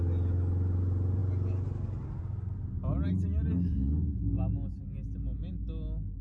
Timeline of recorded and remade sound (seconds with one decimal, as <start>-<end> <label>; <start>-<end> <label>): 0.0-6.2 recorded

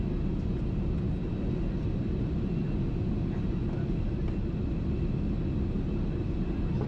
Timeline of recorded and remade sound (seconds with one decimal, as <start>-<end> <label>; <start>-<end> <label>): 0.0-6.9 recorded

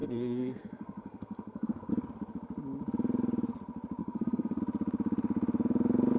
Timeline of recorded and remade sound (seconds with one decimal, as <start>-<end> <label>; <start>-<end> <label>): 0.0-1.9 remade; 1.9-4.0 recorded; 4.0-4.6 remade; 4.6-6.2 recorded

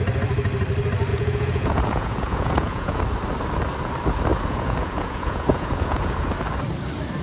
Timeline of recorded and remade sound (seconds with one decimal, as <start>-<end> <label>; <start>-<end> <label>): 0.0-1.1 recorded; 1.1-3.0 remade; 3.0-4.3 recorded; 4.3-6.3 remade; 6.3-7.2 recorded

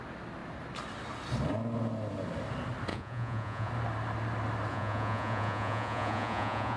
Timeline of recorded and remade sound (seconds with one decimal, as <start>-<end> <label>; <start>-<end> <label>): 0.0-2.9 recorded; 2.9-3.7 remade; 3.7-4.7 recorded; 4.7-6.8 remade